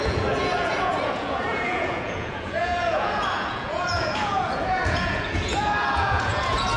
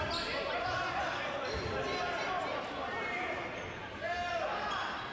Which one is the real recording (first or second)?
second